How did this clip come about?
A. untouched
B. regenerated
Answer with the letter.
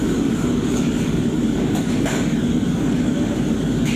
B